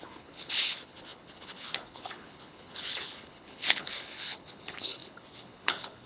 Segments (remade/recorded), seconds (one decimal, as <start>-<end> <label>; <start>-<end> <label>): 0.0-6.1 remade